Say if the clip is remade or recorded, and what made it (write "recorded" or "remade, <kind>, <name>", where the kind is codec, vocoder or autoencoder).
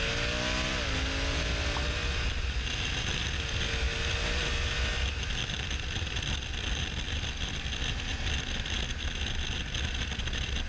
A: recorded